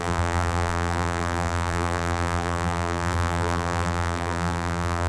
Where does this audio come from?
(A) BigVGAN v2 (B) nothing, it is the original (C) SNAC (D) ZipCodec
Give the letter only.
A